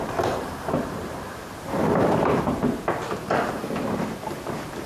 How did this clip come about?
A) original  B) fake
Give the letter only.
B